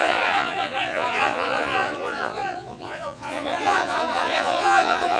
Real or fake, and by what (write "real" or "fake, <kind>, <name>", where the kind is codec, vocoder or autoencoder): fake, vocoder, Vocos